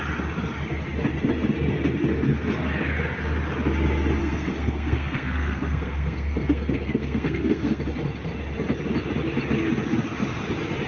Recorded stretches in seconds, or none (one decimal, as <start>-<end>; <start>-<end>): 0.0-4.2; 7.8-10.9